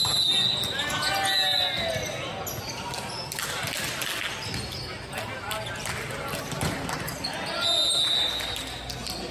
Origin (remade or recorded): recorded